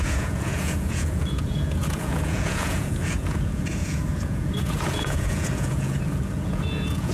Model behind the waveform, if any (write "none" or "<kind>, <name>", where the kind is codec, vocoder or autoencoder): vocoder, Vocos